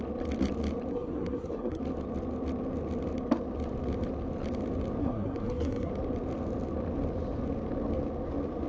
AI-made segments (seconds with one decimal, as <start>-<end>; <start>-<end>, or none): 0.9-1.8; 5.0-5.9